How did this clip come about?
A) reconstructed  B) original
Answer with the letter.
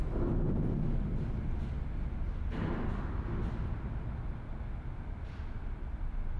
B